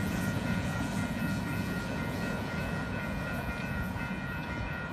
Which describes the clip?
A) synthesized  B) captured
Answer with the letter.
A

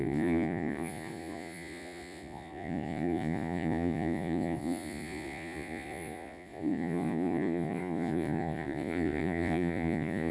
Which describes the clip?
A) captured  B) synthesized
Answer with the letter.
B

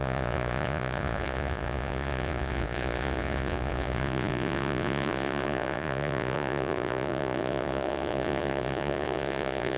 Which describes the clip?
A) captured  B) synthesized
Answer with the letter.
B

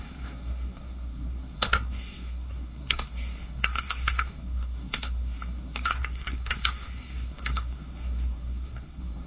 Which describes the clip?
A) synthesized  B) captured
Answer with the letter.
A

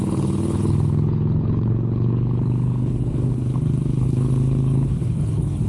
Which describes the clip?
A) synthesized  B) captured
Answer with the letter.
A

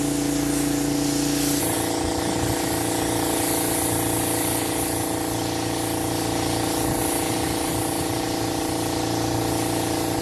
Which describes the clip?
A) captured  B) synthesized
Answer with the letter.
A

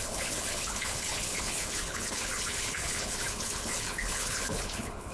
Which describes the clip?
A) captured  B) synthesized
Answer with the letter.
B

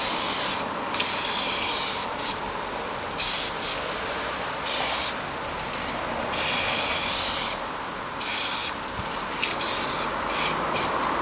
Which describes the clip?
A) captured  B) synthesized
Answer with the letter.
A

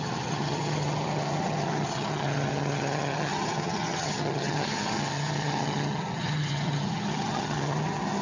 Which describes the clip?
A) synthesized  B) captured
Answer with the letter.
A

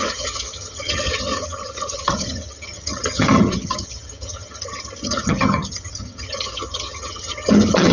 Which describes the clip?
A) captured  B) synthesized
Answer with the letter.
B